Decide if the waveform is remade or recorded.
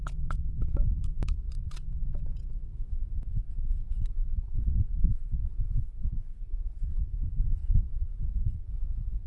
remade